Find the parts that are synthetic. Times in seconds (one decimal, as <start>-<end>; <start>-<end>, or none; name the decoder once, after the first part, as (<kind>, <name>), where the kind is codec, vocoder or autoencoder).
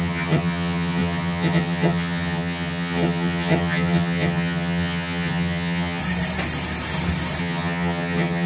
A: 0.0-6.0 (vocoder, HiFi-GAN); 7.4-8.5